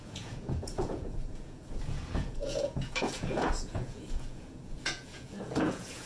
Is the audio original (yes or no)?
no